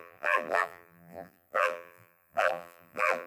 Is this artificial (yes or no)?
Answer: yes